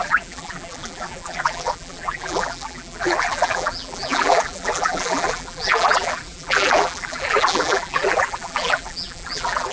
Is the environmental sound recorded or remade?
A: remade